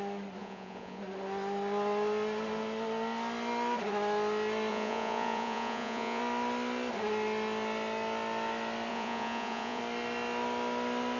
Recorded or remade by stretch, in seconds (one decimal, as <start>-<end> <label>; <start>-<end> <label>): 0.0-0.4 recorded; 0.4-1.0 remade; 1.0-4.7 recorded; 4.7-6.2 remade; 6.2-8.9 recorded; 8.9-9.8 remade; 9.8-11.2 recorded